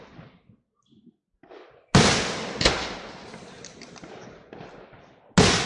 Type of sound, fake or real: real